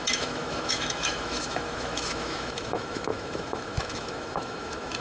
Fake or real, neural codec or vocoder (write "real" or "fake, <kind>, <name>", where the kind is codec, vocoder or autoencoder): fake, autoencoder, DAC-VAE